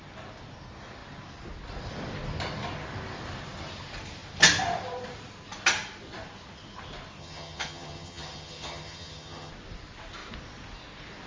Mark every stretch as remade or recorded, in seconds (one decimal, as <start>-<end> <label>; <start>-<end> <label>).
0.0-7.2 recorded; 7.2-9.5 remade; 9.5-11.3 recorded